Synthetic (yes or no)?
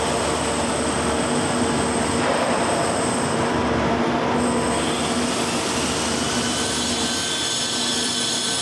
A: no